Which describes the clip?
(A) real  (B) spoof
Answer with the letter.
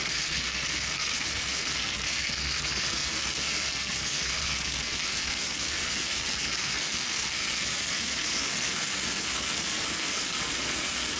B